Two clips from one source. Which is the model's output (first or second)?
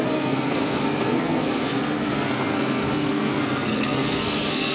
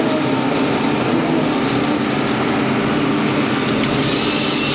first